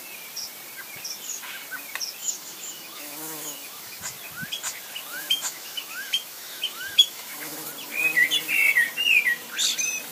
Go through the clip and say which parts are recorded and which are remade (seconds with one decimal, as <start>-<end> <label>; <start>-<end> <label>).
0.0-2.2 recorded; 2.2-4.0 remade; 4.0-5.1 recorded; 5.1-7.7 remade; 7.7-10.1 recorded